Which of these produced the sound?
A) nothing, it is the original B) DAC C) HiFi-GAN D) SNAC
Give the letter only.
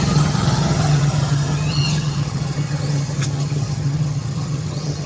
C